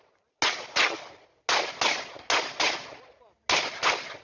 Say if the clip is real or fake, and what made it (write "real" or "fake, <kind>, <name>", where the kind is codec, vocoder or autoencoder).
real